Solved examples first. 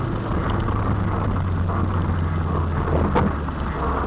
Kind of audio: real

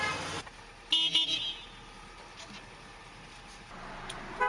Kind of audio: real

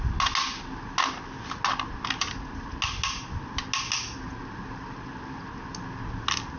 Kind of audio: real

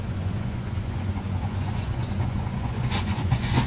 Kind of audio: fake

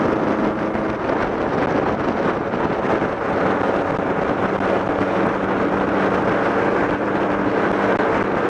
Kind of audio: real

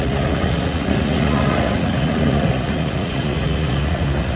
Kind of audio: fake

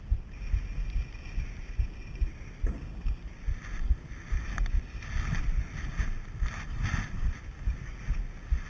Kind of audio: real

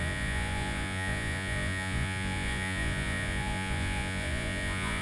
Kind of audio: fake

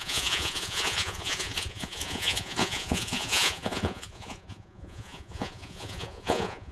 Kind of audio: fake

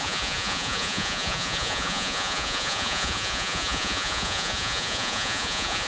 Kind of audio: fake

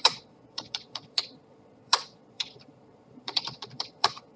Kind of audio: fake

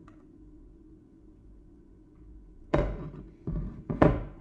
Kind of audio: fake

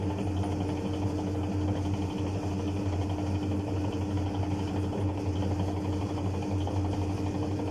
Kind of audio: real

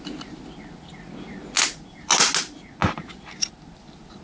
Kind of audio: real